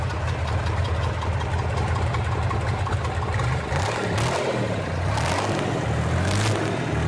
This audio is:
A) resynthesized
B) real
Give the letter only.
B